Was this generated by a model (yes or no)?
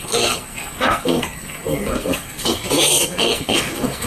yes